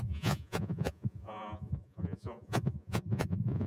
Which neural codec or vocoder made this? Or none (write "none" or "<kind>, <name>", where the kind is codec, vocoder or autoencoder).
vocoder, Vocos